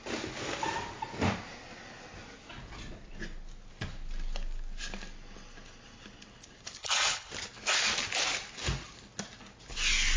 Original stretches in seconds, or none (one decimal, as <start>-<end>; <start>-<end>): 0.0-6.8; 7.3-10.2